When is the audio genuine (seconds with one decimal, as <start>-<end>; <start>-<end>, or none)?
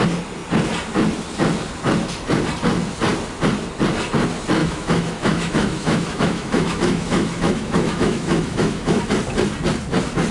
0.0-4.6; 9.0-10.3